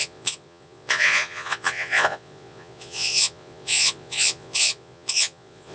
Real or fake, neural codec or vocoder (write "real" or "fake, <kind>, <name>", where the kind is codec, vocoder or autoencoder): fake, vocoder, Vocos